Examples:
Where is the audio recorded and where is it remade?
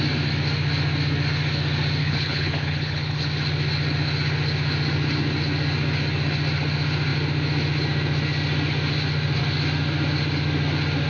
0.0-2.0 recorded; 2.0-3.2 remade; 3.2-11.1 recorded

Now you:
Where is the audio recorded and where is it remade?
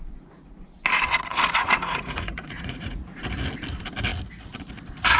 0.0-1.3 recorded; 1.3-3.2 remade; 3.2-5.2 recorded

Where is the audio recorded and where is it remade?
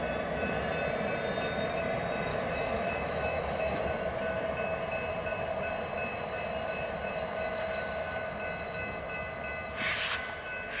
0.0-2.3 recorded; 2.3-3.8 remade; 3.8-10.8 recorded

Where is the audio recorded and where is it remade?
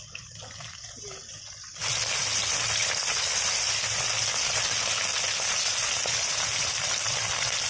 0.0-7.7 recorded